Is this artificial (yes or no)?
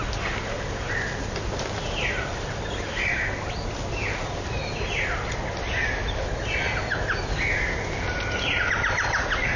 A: no